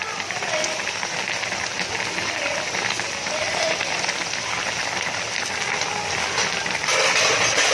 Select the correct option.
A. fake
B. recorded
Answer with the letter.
B